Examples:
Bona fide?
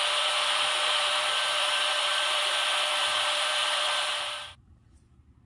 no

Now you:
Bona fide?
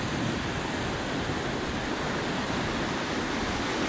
no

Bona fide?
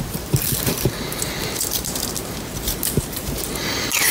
yes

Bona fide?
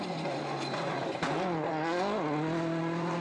yes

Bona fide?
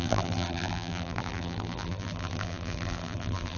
no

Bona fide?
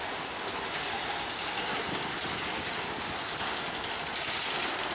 yes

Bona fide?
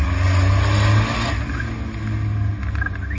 yes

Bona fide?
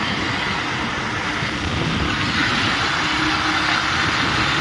yes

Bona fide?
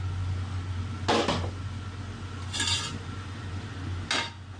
yes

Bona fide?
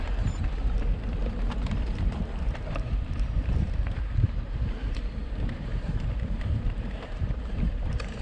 no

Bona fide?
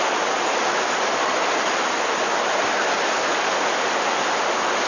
yes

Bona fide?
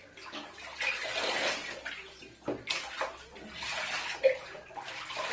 yes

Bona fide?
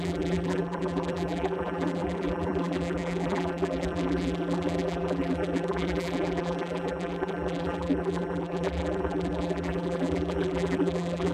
no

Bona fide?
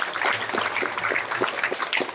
yes